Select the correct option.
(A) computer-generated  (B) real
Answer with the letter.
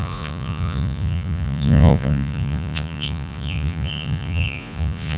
A